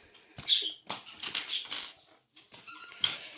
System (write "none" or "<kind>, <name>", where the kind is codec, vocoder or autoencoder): none